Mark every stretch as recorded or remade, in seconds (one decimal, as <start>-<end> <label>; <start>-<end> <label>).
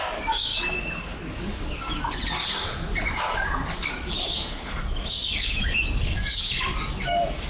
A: 0.0-2.0 remade; 2.0-3.8 recorded; 3.8-6.9 remade; 6.9-7.5 recorded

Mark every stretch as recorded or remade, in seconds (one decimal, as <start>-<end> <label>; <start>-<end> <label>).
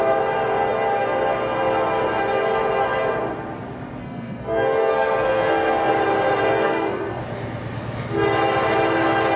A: 0.0-4.0 recorded; 4.0-5.9 remade; 5.9-6.5 recorded; 6.5-7.2 remade; 7.2-9.4 recorded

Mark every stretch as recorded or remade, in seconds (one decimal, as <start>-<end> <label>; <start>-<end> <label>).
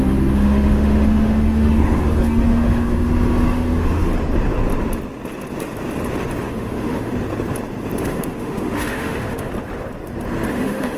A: 0.0-4.1 remade; 4.1-6.5 recorded; 6.5-7.1 remade; 7.1-8.0 recorded; 8.0-9.5 remade; 9.5-10.5 recorded; 10.5-11.0 remade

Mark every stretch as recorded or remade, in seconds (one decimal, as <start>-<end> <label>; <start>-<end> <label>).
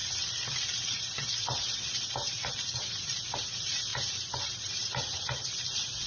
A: 0.0-3.9 remade; 3.9-4.6 recorded; 4.6-6.1 remade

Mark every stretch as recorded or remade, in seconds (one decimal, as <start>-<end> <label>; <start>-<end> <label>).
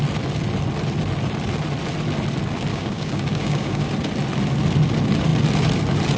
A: 0.0-2.7 recorded; 2.7-3.9 remade; 3.9-6.2 recorded